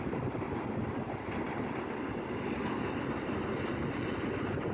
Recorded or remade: recorded